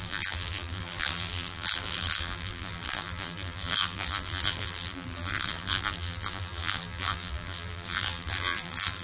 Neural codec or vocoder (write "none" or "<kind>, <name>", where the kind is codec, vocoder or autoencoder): vocoder, BigVGAN v2